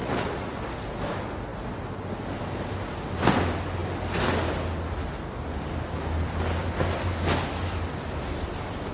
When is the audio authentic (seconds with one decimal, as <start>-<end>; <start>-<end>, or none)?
0.6-8.9